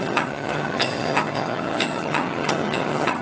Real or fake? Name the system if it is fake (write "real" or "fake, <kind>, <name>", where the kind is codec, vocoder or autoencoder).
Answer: fake, vocoder, HiFi-GAN